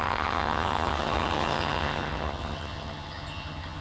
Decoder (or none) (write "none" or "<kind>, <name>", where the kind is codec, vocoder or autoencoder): vocoder, HiFi-GAN